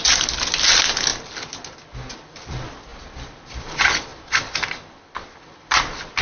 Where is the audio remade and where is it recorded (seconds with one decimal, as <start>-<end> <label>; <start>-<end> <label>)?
0.0-1.1 remade; 1.1-1.9 recorded; 1.9-4.1 remade; 4.1-5.0 recorded; 5.0-6.2 remade